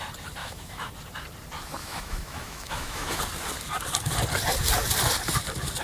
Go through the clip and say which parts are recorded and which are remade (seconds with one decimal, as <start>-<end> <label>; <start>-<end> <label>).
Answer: 0.0-0.4 recorded; 0.4-0.9 remade; 0.9-1.8 recorded; 1.8-3.2 remade; 3.2-5.8 recorded